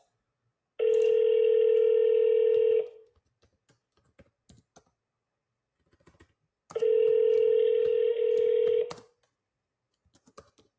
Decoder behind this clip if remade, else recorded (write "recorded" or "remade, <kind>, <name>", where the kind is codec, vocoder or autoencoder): recorded